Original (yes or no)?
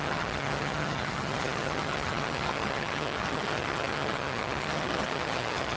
no